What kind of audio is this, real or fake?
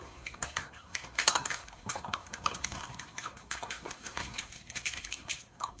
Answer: fake